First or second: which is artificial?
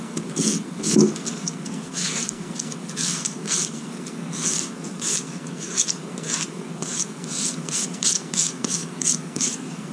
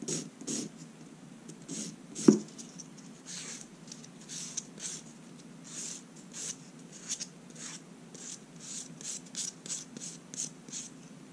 first